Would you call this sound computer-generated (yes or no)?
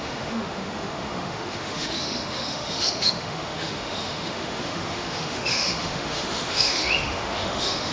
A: yes